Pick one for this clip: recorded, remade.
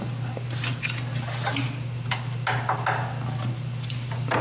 recorded